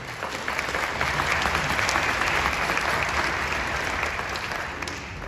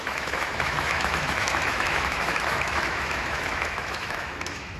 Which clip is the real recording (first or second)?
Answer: first